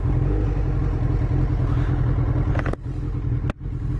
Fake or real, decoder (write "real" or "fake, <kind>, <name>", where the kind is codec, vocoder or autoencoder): real